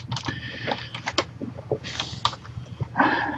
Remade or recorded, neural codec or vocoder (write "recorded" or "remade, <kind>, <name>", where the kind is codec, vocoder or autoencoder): recorded